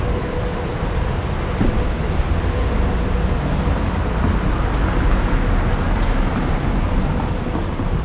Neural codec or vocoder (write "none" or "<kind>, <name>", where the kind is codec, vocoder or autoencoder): none